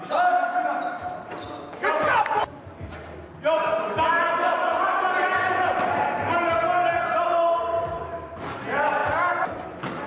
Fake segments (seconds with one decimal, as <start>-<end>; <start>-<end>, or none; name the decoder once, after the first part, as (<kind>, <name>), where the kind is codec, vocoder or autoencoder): none